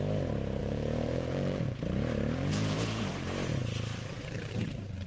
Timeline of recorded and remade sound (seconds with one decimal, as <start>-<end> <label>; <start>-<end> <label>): 0.0-0.6 recorded; 0.6-1.8 remade; 1.8-2.5 recorded; 2.5-3.1 remade; 3.1-5.1 recorded